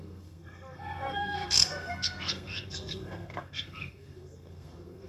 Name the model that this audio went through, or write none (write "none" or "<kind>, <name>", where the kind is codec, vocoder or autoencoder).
codec, SNAC